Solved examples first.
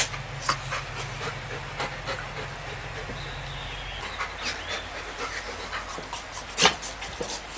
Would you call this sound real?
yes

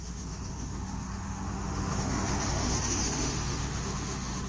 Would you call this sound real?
no